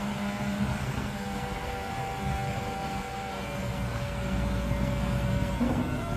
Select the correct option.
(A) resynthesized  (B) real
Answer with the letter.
A